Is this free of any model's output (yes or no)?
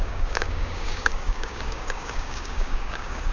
no